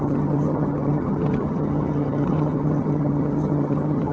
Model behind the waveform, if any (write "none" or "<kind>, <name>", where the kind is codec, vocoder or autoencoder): vocoder, HiFi-GAN